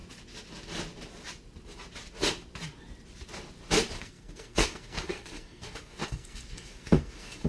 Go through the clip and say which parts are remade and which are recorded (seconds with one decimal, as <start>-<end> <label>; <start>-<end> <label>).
0.0-4.0 recorded; 4.0-7.5 remade